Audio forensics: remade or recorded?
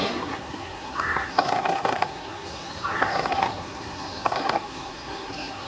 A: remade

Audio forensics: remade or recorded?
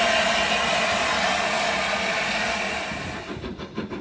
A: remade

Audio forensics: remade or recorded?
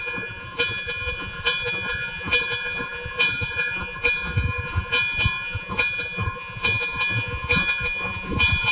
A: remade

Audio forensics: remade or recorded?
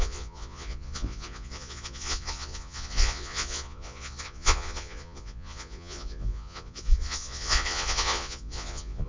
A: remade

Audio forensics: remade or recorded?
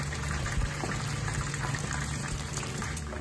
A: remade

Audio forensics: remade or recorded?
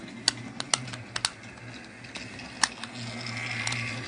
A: recorded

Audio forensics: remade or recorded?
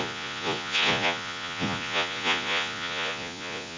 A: remade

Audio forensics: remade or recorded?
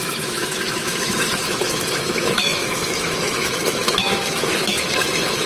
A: remade